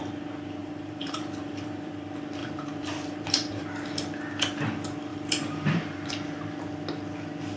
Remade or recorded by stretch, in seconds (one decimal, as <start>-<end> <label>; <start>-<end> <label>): 0.0-0.6 recorded; 0.6-1.9 remade; 1.9-2.4 recorded; 2.4-3.7 remade; 3.7-5.1 recorded; 5.1-6.1 remade; 6.1-7.6 recorded